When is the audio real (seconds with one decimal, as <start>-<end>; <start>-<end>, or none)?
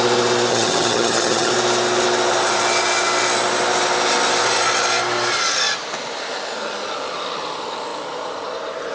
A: 0.0-0.5; 1.5-8.9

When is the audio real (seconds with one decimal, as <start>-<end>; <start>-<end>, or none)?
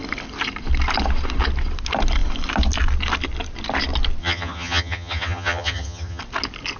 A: 0.0-4.2; 6.2-6.8